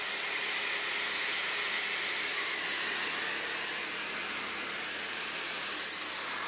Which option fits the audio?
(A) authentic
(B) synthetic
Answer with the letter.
A